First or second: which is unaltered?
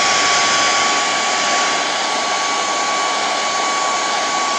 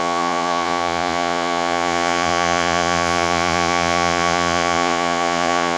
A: first